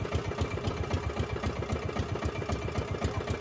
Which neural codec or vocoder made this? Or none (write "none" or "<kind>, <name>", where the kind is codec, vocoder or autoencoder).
none